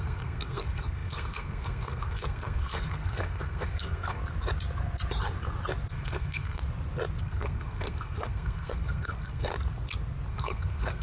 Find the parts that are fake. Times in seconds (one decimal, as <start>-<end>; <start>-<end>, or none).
0.0-4.2; 5.9-6.6; 7.2-9.5; 10.3-11.0